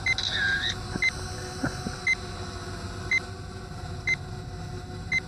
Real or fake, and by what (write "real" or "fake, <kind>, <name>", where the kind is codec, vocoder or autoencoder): real